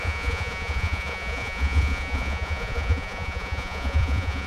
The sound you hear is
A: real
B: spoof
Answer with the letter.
B